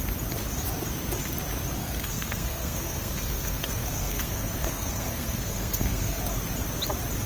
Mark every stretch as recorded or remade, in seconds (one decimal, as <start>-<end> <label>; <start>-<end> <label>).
0.0-1.8 recorded; 1.8-6.2 remade; 6.2-7.3 recorded